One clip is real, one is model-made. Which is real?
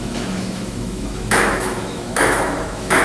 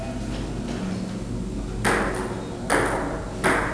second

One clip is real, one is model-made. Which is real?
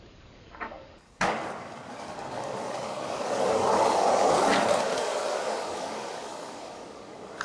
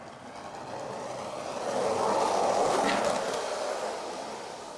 second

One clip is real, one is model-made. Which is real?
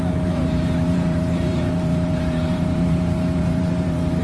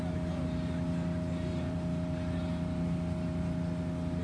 second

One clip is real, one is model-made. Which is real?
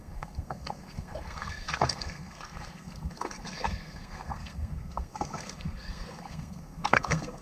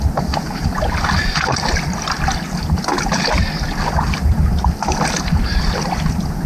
second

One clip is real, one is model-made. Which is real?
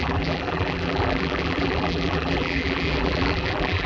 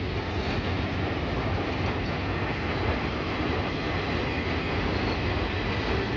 second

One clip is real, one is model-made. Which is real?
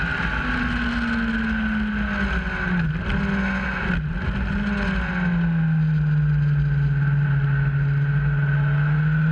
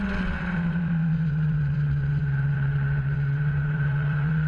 first